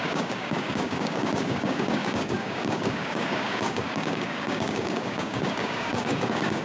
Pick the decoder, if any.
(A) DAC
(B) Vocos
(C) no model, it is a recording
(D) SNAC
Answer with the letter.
A